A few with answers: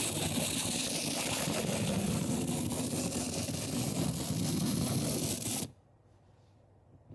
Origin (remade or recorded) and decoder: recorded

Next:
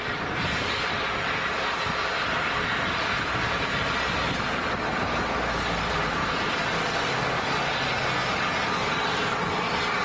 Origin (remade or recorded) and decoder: recorded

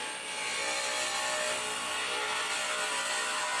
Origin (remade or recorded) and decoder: recorded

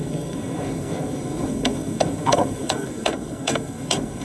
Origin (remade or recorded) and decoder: remade, codec, SNAC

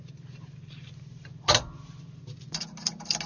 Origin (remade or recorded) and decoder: recorded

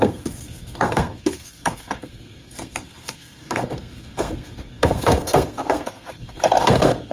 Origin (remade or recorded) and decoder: remade, codec, SNAC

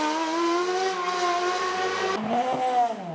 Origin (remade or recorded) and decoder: recorded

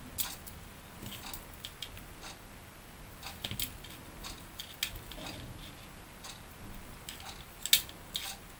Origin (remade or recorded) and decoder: recorded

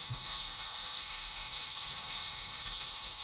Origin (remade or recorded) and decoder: remade, codec, SNAC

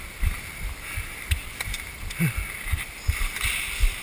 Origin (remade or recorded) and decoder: recorded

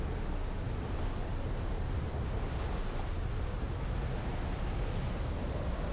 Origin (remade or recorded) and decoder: recorded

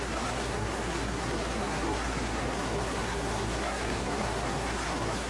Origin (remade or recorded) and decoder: remade, codec, SNAC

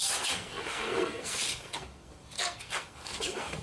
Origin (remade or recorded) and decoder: remade, codec, SNAC